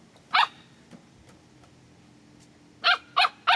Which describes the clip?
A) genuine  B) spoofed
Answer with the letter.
A